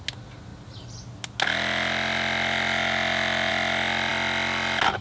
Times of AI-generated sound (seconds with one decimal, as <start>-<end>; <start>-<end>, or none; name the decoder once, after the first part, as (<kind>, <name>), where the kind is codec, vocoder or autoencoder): none

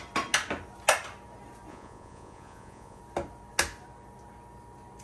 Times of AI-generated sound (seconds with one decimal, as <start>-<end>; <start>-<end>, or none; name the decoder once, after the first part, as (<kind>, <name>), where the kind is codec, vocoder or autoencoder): 1.7-3.0 (vocoder, Vocos)

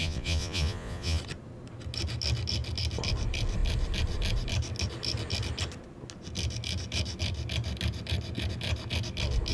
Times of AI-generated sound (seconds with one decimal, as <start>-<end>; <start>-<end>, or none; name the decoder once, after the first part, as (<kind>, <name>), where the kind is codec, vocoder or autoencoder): 0.0-1.2 (vocoder, Vocos)